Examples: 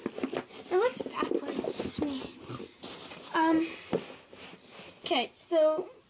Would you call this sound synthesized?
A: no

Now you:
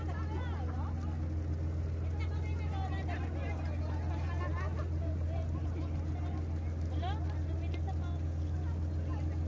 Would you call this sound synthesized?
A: no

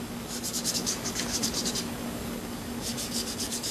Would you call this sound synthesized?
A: yes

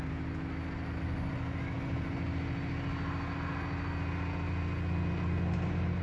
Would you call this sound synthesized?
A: no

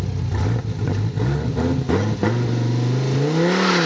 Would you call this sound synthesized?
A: no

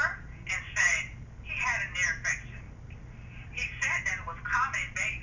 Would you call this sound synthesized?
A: no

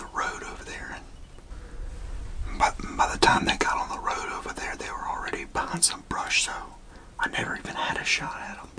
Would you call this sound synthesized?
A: no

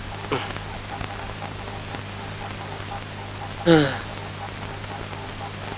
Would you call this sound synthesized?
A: no